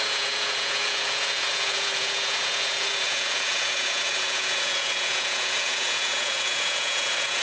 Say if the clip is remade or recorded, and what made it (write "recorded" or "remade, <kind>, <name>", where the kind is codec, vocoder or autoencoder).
remade, vocoder, Vocos